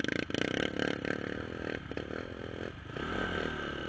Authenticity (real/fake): real